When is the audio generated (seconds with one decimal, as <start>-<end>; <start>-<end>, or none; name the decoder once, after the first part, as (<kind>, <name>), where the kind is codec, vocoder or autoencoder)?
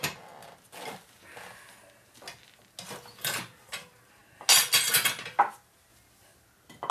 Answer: none